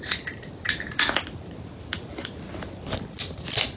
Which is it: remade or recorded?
recorded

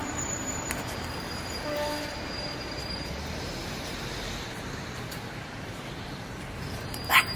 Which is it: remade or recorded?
remade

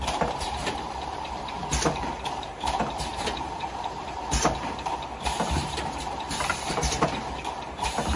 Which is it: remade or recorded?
remade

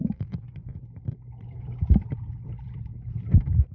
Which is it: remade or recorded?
remade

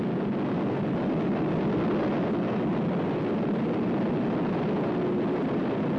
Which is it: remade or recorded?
recorded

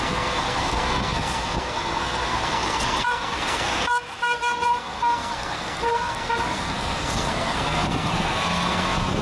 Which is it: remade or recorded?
remade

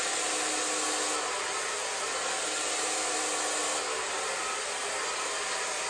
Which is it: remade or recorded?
recorded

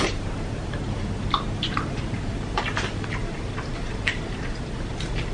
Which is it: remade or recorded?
remade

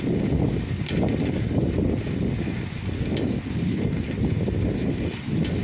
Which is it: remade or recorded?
recorded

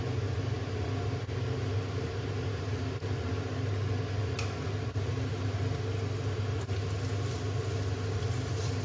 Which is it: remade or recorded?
recorded